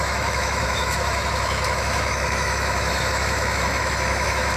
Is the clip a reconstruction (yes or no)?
yes